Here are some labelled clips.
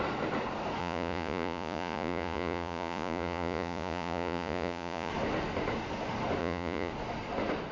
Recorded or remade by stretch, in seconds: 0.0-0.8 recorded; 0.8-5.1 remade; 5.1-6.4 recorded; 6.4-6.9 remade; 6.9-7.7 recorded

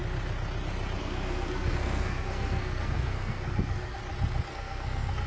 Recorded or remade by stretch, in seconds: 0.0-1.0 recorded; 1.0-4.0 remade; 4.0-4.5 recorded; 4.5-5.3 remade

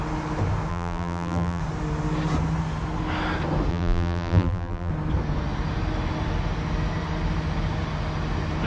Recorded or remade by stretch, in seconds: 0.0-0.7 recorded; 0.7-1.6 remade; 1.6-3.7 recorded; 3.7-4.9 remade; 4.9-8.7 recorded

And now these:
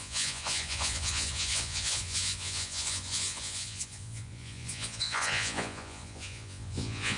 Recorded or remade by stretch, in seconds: 0.0-7.2 remade

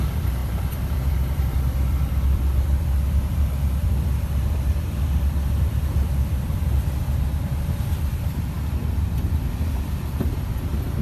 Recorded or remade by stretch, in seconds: 0.0-11.0 remade

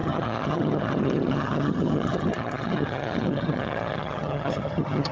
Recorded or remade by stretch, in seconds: 0.0-5.1 remade

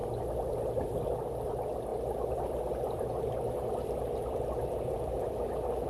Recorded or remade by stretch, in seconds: 0.0-1.9 recorded; 1.9-5.4 remade; 5.4-5.9 recorded

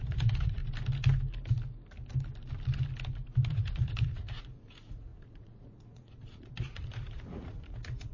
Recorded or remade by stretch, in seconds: 0.0-0.6 remade; 0.6-3.5 recorded; 3.5-8.1 remade